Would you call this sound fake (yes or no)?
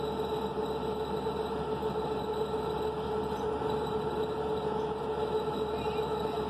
no